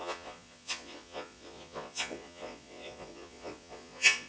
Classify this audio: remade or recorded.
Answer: remade